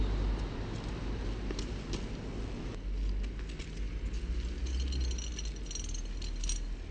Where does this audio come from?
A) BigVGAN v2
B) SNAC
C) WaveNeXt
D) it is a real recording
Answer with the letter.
D